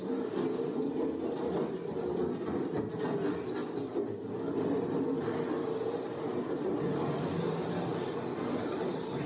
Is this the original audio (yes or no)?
yes